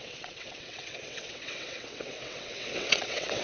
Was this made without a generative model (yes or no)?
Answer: no